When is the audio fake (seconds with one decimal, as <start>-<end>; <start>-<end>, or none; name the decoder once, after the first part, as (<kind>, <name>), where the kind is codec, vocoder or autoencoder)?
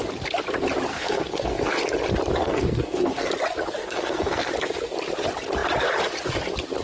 0.9-1.7 (codec, SNAC); 2.4-3.3; 3.8-4.5